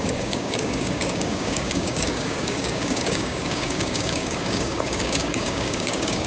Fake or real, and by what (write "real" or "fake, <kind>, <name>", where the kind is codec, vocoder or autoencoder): fake, codec, DAC